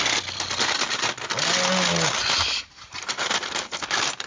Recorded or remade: recorded